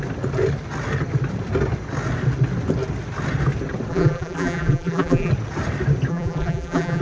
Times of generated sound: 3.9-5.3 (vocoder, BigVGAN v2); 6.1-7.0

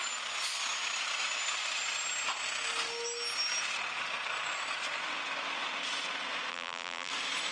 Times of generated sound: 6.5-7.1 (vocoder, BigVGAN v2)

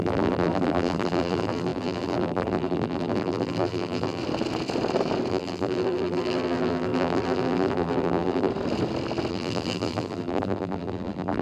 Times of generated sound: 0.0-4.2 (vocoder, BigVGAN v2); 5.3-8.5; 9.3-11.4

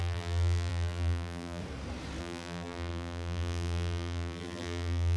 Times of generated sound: 0.0-1.6 (vocoder, BigVGAN v2); 2.2-5.2

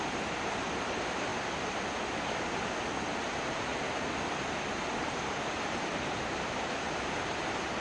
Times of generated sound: 0.0-1.3 (vocoder, BigVGAN v2); 3.3-3.7; 5.0-7.8

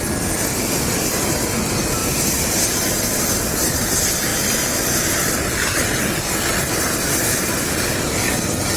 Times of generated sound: 2.0-2.8 (vocoder, BigVGAN v2)